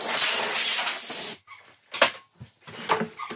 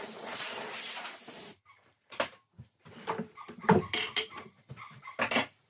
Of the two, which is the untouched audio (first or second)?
first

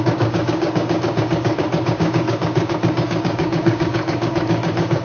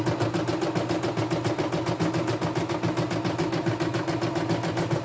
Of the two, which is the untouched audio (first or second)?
second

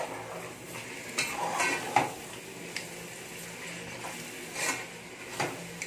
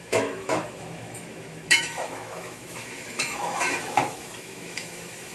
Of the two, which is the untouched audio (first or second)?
first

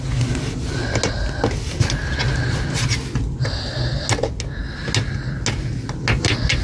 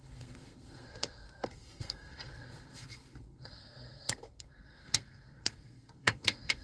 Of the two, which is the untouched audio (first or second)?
first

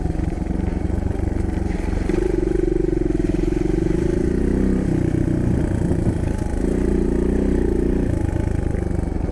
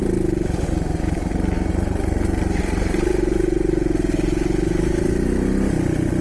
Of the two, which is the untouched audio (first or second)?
second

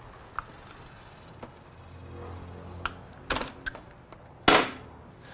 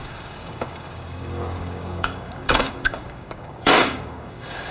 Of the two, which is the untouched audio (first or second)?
first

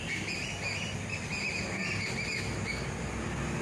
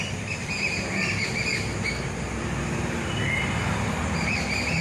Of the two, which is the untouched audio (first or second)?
first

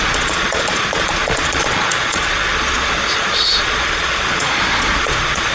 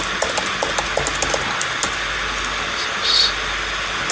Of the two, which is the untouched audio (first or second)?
second